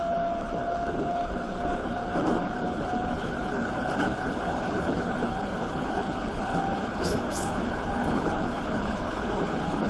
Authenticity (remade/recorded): remade